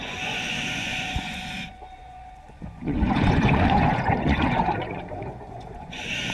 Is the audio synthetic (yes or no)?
yes